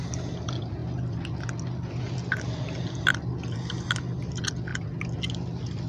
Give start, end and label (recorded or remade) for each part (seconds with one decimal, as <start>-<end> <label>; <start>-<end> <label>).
0.0-5.9 recorded